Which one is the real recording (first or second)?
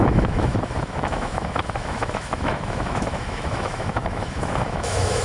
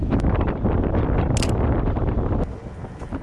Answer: second